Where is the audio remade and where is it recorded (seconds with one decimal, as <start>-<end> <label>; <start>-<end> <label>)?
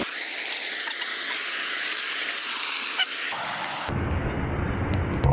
0.0-1.1 recorded; 1.1-4.3 remade; 4.3-5.3 recorded